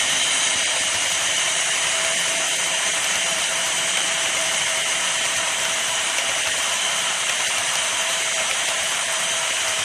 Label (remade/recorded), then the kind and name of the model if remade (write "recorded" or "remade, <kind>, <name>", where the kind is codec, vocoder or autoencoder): remade, vocoder, BigVGAN v2